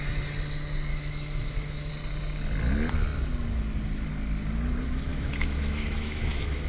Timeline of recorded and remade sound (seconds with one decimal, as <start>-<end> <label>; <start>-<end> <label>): 0.0-0.9 recorded; 0.9-1.9 remade; 1.9-5.1 recorded; 5.1-6.7 remade